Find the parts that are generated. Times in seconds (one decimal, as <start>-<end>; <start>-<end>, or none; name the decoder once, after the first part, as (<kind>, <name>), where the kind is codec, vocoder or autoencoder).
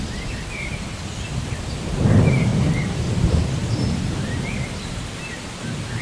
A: none